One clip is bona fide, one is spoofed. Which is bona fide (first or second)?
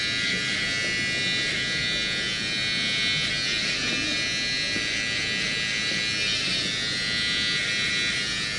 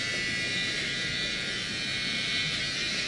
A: first